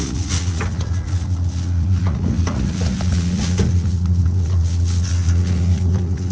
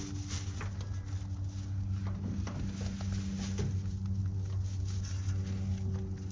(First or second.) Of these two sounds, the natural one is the second